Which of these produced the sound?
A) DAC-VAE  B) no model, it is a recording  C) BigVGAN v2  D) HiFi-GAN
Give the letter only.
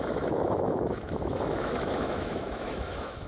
A